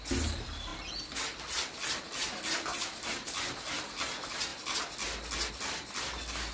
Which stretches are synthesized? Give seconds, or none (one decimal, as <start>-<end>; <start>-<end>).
none